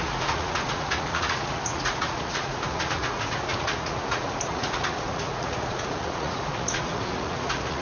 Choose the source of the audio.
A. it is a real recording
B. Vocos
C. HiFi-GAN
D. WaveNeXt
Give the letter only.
B